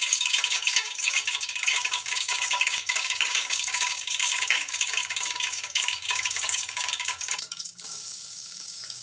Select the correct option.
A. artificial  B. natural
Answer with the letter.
A